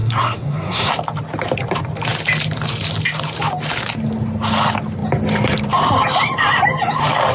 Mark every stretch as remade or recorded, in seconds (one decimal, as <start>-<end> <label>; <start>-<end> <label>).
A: 0.0-0.9 remade; 0.9-7.3 recorded